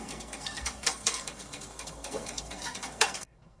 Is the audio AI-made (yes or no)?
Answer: yes